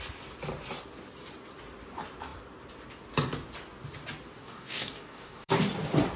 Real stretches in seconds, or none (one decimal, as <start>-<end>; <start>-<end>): 0.0-4.4; 5.5-6.2